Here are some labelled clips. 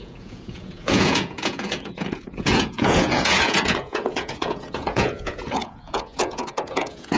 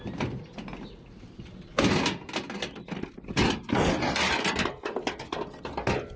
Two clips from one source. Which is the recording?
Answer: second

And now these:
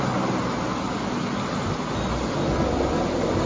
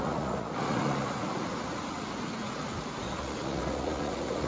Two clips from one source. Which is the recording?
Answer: first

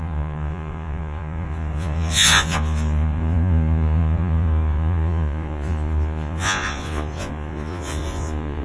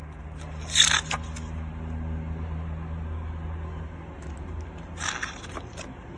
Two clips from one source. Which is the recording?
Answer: second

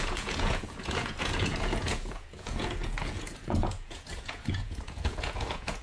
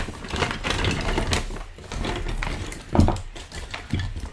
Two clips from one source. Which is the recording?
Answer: second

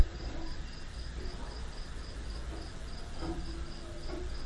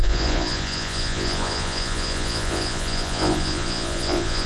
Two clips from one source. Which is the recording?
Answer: first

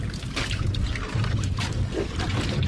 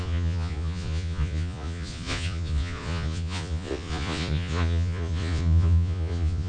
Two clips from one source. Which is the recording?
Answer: first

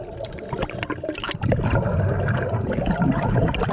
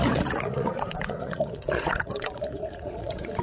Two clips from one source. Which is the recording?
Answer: first